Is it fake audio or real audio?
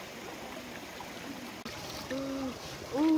real